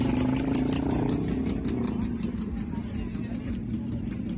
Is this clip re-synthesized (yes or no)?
no